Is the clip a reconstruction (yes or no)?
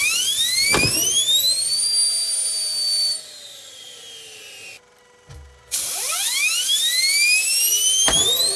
no